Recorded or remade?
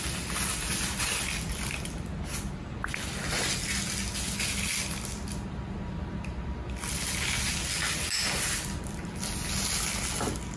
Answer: recorded